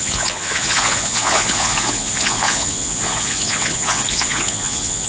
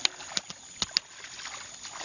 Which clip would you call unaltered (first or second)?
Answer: second